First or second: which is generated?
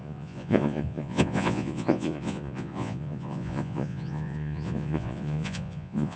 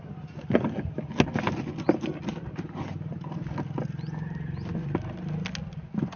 first